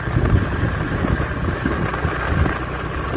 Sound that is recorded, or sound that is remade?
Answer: recorded